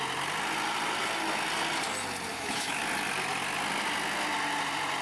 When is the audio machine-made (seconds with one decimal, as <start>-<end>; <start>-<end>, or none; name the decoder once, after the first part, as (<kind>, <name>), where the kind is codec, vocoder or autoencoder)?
2.3-2.8 (autoencoder, DAC-VAE)